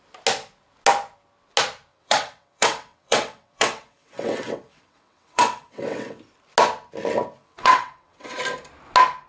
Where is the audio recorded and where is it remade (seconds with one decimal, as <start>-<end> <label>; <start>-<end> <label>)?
0.0-1.9 recorded; 1.9-6.2 remade; 6.2-7.4 recorded; 7.4-8.4 remade; 8.4-9.3 recorded